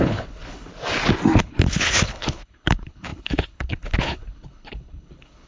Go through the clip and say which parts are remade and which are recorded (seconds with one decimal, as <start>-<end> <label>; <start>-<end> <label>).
0.0-0.7 remade; 0.7-1.4 recorded; 1.4-5.5 remade